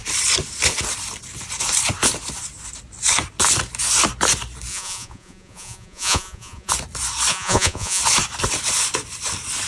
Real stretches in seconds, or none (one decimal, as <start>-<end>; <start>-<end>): 0.0-4.7; 6.7-7.3; 8.0-9.7

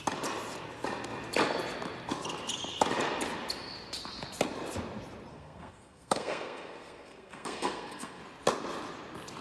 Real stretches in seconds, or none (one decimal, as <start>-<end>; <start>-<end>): 0.0-5.3; 8.2-9.4

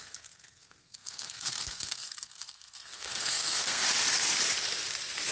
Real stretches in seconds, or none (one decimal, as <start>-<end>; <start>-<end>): 3.8-5.3

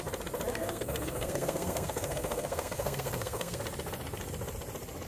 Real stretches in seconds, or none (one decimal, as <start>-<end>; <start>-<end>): 0.0-0.5; 3.6-5.1

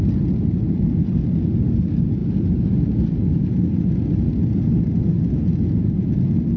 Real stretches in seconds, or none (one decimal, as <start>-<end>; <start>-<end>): 0.0-6.6

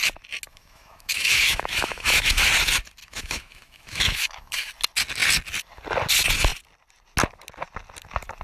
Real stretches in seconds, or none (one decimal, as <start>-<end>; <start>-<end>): 0.0-0.5; 2.4-3.0; 4.7-8.4

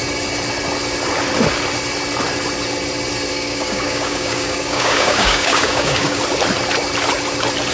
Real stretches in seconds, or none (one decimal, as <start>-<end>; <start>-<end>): 0.0-3.3; 6.2-7.7

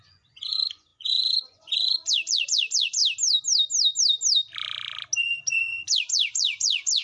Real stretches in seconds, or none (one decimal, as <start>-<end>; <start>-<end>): 3.0-5.2